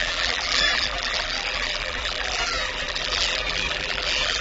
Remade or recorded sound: remade